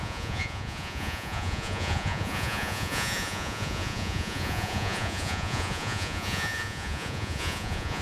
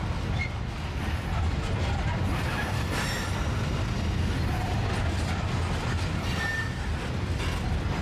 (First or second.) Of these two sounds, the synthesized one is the first